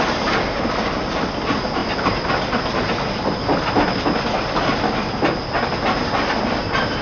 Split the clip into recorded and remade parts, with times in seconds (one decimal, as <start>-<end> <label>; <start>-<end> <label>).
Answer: 0.0-1.8 recorded; 1.8-2.3 remade; 2.3-7.0 recorded